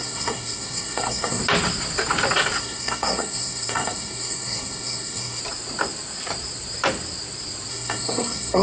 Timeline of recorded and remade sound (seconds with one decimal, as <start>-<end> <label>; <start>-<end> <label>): 0.0-1.4 remade; 1.4-2.6 recorded; 2.6-5.4 remade; 5.4-7.7 recorded; 7.7-8.6 remade